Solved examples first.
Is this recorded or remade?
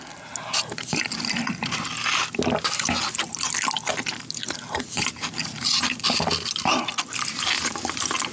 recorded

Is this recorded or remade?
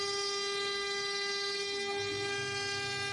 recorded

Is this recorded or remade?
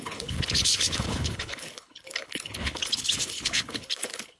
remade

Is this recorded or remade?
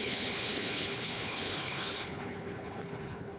remade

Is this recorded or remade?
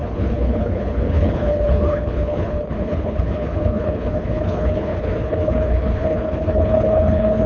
remade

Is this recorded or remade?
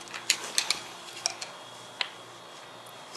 recorded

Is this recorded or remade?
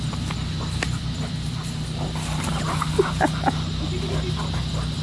recorded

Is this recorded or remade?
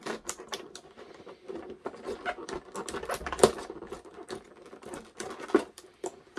recorded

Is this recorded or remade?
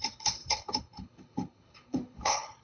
remade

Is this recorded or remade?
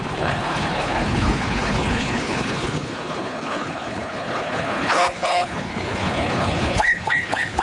remade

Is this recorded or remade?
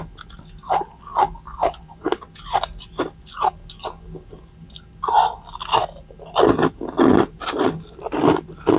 recorded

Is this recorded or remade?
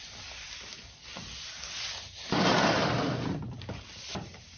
recorded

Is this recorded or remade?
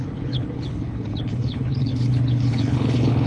remade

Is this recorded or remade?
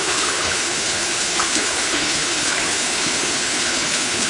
remade